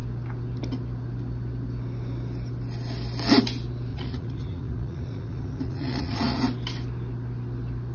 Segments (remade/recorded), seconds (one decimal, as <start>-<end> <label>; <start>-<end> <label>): 0.0-3.9 recorded; 3.9-6.4 remade; 6.4-7.9 recorded